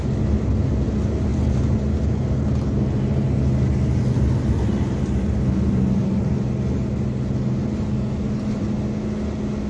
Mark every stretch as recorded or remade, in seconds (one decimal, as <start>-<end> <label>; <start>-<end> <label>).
0.0-9.7 recorded